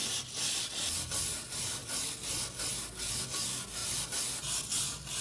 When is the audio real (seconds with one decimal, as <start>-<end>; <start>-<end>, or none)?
0.0-5.2